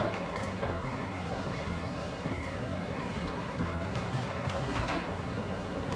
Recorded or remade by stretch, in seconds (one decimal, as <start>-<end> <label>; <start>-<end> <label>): 0.0-6.0 remade